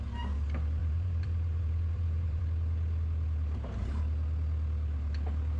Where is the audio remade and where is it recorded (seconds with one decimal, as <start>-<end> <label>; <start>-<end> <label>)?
0.0-0.8 recorded; 0.8-2.4 remade; 2.4-5.6 recorded